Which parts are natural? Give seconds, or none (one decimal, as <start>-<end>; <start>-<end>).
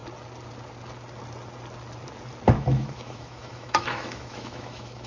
0.0-2.5